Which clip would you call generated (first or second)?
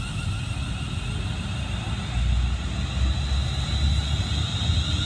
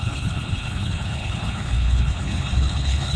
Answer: second